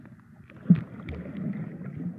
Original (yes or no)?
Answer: yes